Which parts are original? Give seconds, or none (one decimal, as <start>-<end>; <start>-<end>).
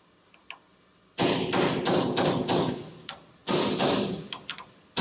0.0-5.0